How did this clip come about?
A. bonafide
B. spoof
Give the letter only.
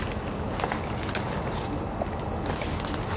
A